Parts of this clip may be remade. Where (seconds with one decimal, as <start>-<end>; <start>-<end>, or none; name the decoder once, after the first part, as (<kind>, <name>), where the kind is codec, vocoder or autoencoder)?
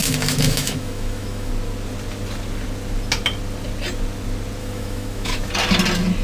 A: 0.0-1.5 (autoencoder, DAC-VAE); 4.6-5.5